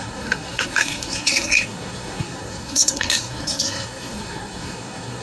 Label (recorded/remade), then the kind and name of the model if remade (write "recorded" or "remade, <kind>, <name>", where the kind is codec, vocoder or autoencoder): remade, codec, SNAC